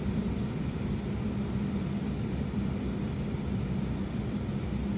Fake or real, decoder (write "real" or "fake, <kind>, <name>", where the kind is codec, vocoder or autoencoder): real